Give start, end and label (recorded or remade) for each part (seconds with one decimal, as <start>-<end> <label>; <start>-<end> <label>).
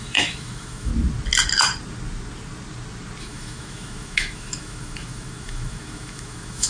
0.0-0.9 remade; 0.9-3.2 recorded; 3.2-6.7 remade